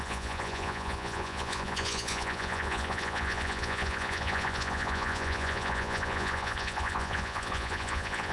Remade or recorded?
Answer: remade